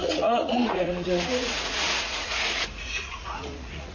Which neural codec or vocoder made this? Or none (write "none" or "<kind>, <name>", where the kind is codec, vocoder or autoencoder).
vocoder, Vocos